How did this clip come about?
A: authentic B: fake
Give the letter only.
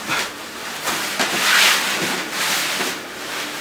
A